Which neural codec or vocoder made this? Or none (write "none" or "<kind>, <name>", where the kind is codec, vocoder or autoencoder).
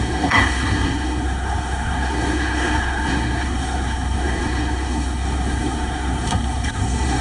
codec, SNAC